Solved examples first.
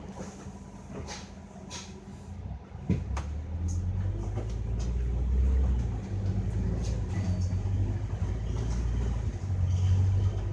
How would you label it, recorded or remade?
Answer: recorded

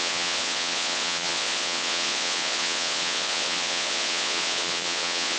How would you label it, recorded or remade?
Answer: remade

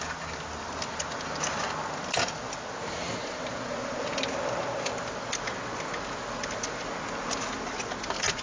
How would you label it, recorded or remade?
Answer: recorded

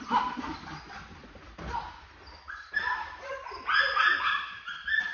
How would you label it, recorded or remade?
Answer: recorded